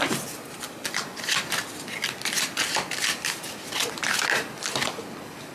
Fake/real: real